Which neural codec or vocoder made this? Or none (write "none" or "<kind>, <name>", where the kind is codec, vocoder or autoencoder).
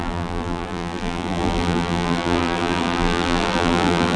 vocoder, BigVGAN v2